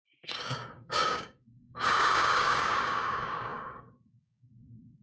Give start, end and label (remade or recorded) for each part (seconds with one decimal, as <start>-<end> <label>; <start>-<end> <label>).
0.0-5.0 remade